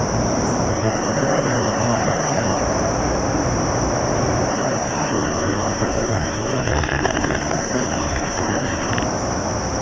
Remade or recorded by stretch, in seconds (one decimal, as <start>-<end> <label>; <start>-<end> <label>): 0.0-0.7 recorded; 0.7-2.6 remade; 2.6-4.5 recorded; 4.5-8.9 remade; 8.9-9.8 recorded